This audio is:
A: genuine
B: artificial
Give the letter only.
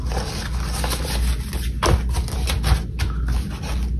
A